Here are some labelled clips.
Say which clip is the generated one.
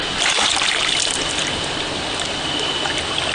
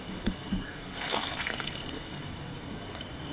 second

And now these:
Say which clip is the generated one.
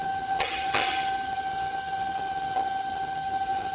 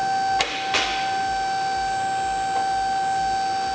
first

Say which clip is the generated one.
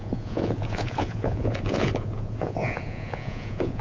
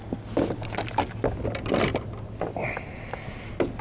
first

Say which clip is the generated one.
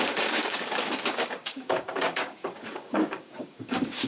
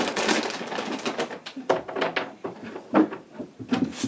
first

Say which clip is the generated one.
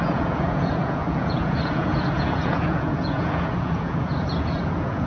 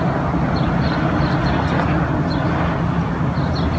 first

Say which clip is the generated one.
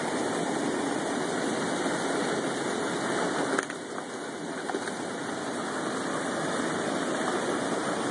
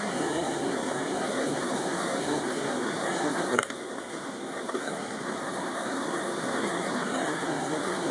second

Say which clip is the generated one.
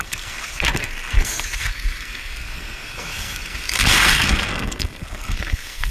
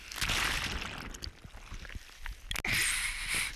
first